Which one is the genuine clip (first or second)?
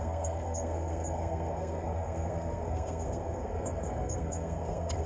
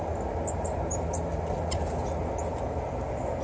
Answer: second